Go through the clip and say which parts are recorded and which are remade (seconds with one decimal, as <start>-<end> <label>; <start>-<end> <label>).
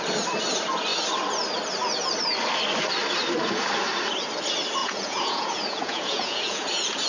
0.0-4.8 recorded; 4.8-7.1 remade